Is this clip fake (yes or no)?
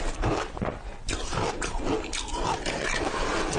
no